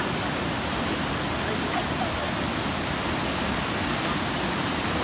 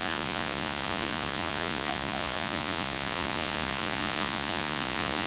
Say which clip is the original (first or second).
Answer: first